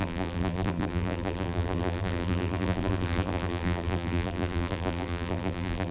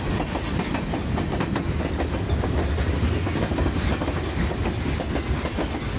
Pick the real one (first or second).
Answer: second